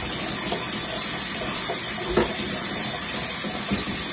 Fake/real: real